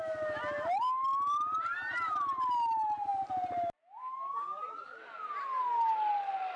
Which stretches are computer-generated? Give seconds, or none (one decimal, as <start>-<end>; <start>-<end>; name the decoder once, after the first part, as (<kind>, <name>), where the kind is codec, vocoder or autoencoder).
none